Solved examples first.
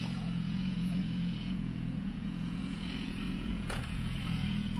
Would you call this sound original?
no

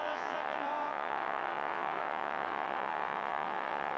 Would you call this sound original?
no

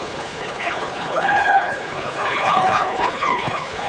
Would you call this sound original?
no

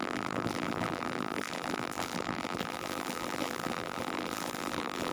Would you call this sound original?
no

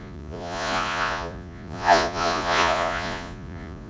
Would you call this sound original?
no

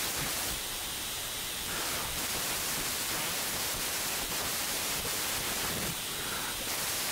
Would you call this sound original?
no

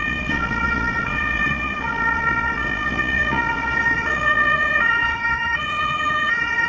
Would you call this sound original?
no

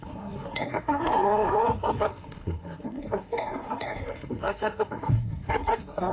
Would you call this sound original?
no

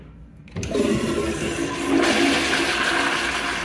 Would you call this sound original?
yes